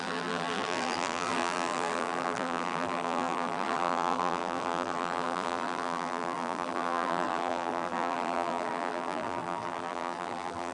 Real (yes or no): no